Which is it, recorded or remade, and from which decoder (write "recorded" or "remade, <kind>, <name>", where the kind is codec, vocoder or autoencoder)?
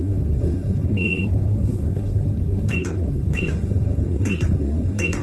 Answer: remade, codec, SNAC